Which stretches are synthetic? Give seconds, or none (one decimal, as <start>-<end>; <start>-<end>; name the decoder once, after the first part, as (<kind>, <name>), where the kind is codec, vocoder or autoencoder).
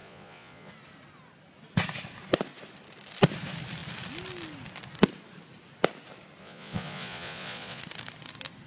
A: 0.0-0.7 (vocoder, Vocos); 6.4-7.8